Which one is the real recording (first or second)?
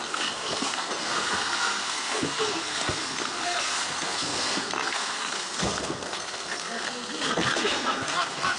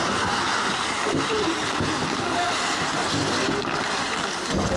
second